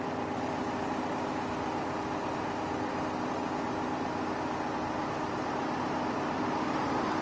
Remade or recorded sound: recorded